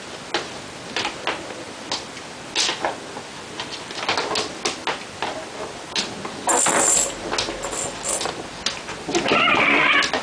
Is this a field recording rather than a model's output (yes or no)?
yes